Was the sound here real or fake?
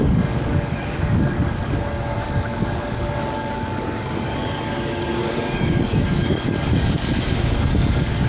fake